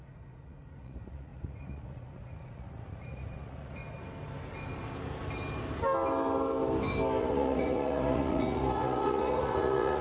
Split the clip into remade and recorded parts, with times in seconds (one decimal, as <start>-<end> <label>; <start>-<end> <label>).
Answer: 0.0-3.8 remade; 3.8-7.2 recorded; 7.2-10.0 remade